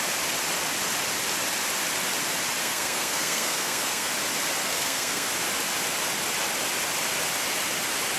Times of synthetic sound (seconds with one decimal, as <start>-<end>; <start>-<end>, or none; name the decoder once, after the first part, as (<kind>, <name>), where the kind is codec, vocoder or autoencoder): 2.6-4.1 (codec, SNAC); 4.6-5.3

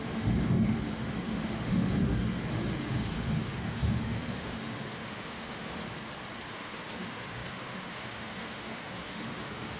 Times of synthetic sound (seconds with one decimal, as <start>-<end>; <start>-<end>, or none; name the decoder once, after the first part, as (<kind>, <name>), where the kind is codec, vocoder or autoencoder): 0.0-5.8 (autoencoder, DAC-VAE); 6.5-9.8

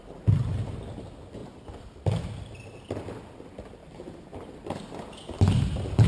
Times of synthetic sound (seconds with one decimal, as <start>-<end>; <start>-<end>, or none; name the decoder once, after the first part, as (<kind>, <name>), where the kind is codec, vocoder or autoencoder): 1.4-2.2 (vocoder, BigVGAN v2); 3.8-4.8

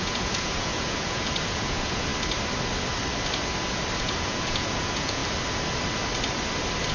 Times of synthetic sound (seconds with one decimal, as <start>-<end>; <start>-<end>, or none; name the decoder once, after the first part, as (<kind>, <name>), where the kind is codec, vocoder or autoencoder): 0.0-2.1 (vocoder, Vocos); 4.0-5.2

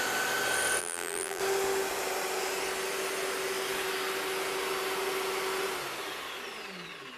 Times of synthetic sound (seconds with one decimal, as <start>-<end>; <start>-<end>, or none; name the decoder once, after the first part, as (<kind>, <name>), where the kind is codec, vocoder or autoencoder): 0.8-1.4 (vocoder, BigVGAN v2)

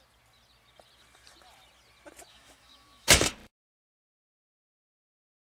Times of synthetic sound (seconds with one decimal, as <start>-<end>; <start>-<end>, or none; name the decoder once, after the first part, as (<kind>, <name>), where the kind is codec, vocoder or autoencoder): 2.3-3.3 (autoencoder, DAC-VAE)

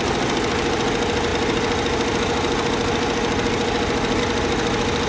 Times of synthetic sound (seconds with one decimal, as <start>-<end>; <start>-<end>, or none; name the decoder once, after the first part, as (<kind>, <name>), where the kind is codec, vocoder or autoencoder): none

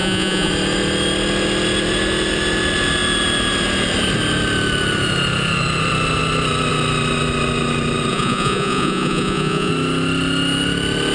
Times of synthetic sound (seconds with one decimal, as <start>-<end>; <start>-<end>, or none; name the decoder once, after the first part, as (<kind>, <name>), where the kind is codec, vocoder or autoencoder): 0.0-0.5 (vocoder, Vocos); 8.1-9.7